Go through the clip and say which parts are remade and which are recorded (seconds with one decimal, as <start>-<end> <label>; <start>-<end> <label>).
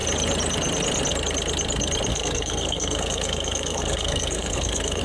0.0-2.1 recorded; 2.1-5.0 remade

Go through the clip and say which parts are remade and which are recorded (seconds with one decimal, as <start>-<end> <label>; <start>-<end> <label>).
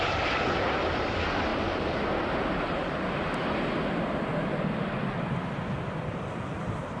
0.0-1.5 recorded; 1.5-2.1 remade; 2.1-5.7 recorded; 5.7-7.0 remade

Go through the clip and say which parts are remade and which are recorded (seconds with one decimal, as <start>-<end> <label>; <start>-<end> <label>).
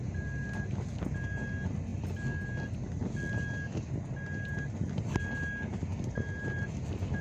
0.0-5.9 recorded; 5.9-6.8 remade; 6.8-7.2 recorded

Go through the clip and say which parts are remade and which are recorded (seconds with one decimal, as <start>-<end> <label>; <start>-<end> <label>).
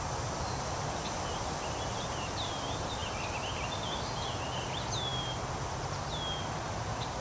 0.0-7.2 recorded